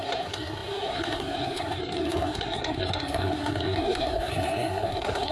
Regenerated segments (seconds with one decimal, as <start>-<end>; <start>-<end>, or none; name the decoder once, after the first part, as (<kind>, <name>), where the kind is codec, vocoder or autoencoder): 0.0-5.3 (codec, SNAC)